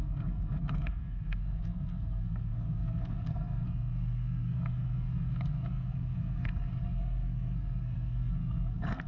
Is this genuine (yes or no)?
no